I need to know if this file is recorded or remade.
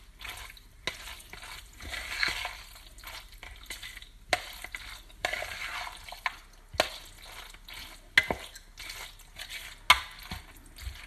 recorded